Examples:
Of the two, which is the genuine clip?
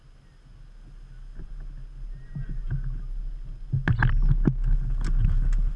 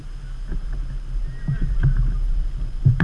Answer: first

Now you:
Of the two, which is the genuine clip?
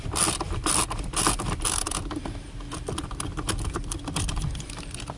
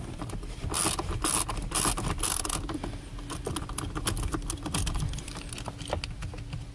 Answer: second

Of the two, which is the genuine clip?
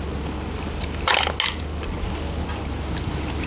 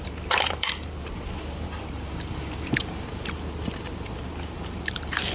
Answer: first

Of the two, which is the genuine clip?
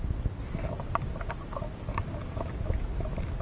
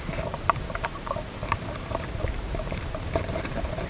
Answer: first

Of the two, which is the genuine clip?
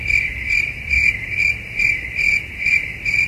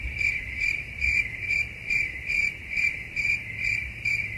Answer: first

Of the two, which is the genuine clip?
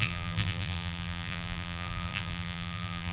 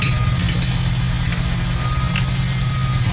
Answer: second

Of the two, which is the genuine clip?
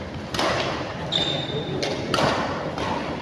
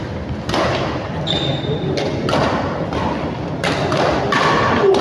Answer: second